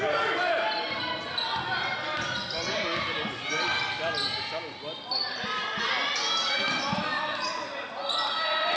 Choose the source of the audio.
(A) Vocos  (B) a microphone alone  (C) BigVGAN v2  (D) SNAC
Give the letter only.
B